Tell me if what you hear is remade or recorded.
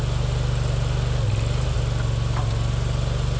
recorded